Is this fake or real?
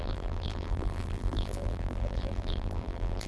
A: fake